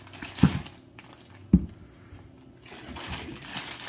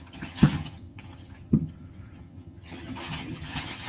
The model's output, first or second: second